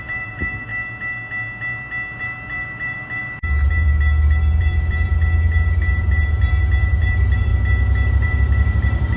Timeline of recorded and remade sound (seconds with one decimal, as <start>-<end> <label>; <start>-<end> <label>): 0.0-0.7 remade; 0.7-2.2 recorded; 2.2-5.1 remade; 5.1-6.0 recorded; 6.0-7.5 remade; 7.5-8.1 recorded; 8.1-9.2 remade